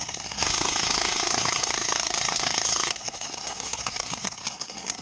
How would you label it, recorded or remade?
remade